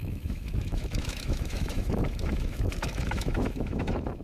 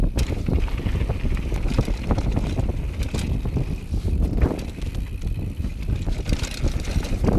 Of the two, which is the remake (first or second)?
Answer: first